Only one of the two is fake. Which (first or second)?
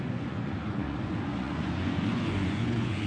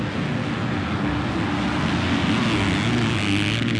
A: first